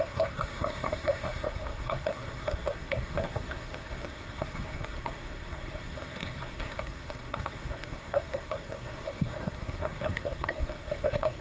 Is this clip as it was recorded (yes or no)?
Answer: no